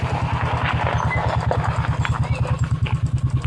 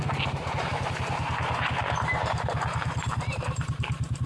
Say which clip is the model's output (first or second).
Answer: second